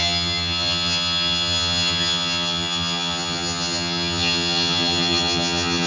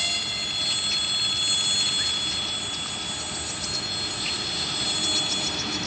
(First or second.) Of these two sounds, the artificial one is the first